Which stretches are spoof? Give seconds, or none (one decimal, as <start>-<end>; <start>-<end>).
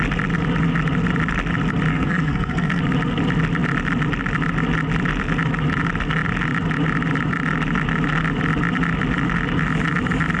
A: 1.9-2.8